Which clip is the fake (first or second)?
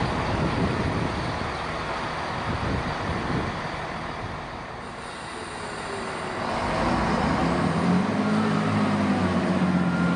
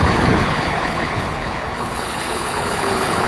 second